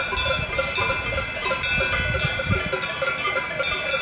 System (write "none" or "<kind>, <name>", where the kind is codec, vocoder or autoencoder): none